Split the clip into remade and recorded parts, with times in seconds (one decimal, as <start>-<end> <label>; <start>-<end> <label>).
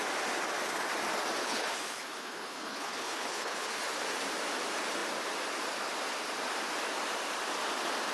0.0-1.4 recorded; 1.4-3.8 remade; 3.8-8.1 recorded